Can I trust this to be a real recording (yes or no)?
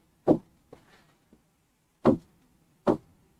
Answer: yes